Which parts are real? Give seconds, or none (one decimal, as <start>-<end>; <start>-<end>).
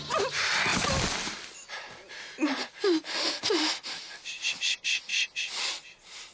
0.0-6.3